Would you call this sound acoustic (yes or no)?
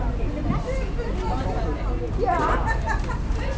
no